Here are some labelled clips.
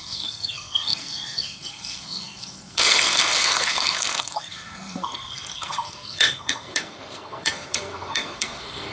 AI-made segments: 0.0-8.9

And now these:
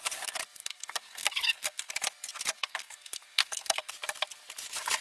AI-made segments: 0.6-1.9; 2.6-3.9

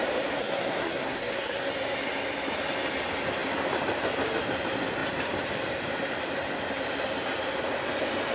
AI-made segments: 0.4-1.7

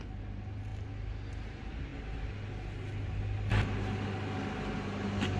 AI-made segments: none

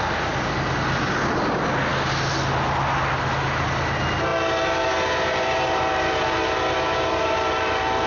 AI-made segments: none